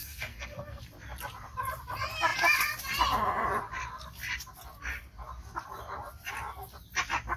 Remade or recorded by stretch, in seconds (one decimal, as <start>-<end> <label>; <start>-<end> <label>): 0.0-0.8 remade; 0.8-7.4 recorded